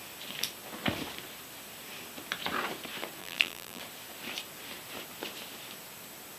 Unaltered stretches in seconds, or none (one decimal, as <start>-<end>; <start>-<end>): 0.0-3.2; 3.8-6.4